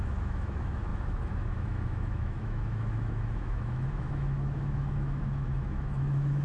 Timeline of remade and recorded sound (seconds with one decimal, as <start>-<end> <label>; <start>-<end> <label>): 0.0-6.4 remade